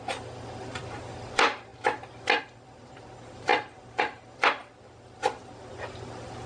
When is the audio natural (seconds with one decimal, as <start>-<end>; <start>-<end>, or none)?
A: 1.7-2.4